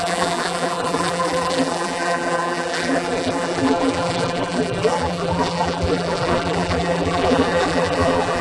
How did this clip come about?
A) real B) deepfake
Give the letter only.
B